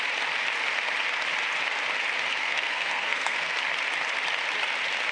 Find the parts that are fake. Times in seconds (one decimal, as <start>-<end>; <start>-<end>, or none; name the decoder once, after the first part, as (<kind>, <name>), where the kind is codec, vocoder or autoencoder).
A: 2.4-3.5 (codec, SNAC)